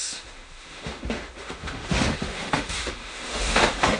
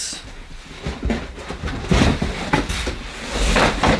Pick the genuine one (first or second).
second